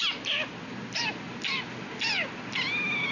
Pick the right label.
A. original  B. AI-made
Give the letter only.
A